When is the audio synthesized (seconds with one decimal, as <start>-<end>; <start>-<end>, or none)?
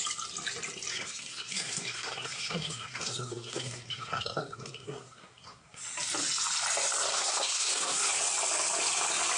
0.9-5.8; 7.1-8.1